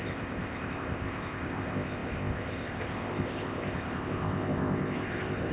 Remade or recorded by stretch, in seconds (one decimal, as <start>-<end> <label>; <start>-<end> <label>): 0.0-5.5 remade